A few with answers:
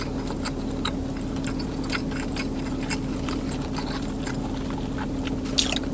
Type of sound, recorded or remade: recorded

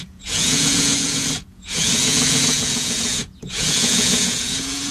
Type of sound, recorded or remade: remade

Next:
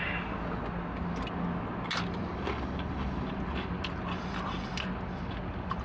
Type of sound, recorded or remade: recorded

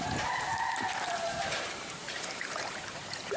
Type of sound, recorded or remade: remade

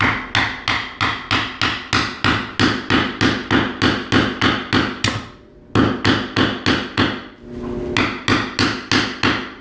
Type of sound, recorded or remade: recorded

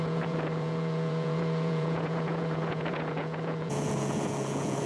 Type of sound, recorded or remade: remade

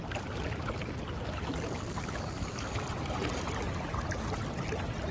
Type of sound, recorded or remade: recorded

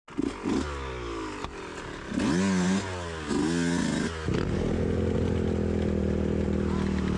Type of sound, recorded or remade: recorded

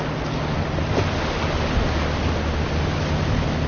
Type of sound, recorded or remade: recorded